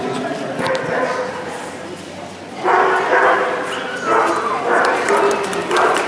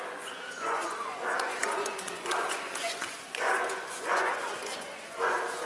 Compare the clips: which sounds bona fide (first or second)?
first